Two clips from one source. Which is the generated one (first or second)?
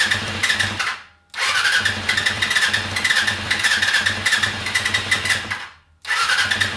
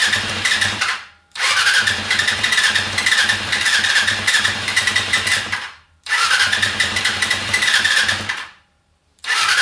second